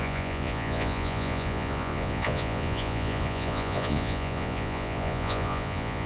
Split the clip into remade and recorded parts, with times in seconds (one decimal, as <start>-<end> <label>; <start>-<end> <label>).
0.0-6.1 remade